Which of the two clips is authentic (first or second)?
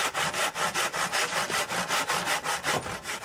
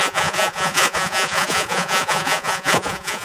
first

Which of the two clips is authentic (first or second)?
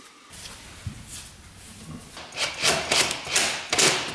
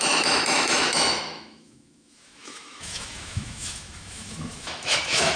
first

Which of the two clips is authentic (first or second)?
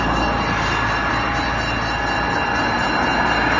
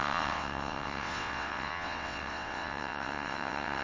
first